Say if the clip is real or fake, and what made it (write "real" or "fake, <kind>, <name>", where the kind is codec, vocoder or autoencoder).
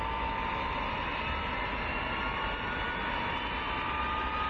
real